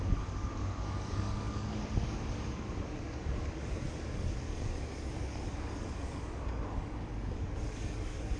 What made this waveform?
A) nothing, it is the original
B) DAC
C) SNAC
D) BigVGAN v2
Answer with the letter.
B